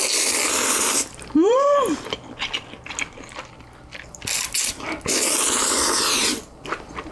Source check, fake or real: fake